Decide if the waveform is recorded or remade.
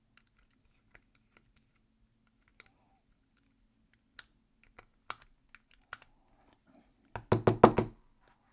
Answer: recorded